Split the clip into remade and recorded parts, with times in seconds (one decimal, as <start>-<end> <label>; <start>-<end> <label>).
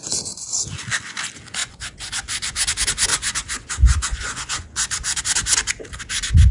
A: 0.0-1.6 recorded; 1.6-2.1 remade; 2.1-3.1 recorded; 3.1-5.2 remade; 5.2-6.5 recorded